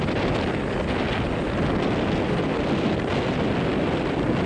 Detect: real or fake real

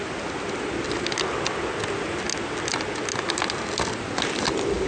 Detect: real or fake real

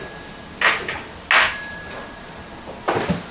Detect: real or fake real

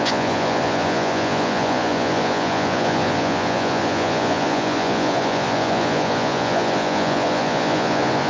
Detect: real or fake fake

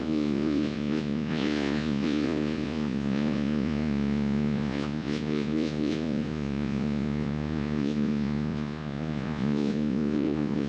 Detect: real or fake fake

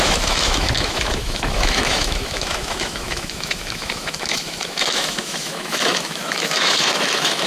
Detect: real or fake fake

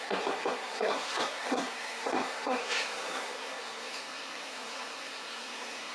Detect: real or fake fake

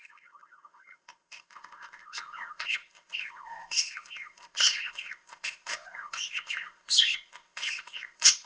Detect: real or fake fake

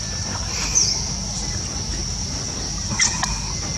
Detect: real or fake real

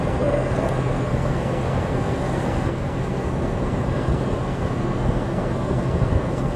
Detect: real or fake fake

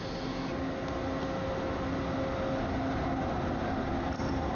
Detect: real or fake real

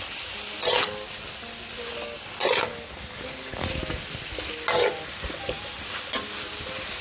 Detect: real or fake real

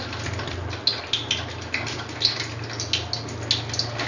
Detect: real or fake real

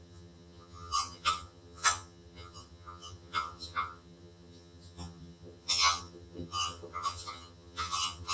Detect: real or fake fake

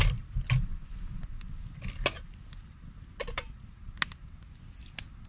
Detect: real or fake real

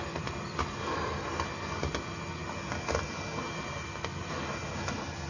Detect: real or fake real